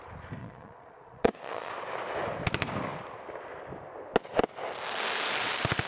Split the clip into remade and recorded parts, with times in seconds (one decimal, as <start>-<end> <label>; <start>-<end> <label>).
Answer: 0.0-0.4 recorded; 0.4-1.7 remade; 1.7-5.9 recorded